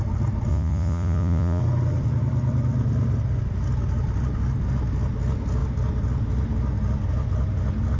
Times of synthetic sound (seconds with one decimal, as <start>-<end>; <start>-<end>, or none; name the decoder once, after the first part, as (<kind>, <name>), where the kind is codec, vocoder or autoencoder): 0.5-1.6 (vocoder, Vocos)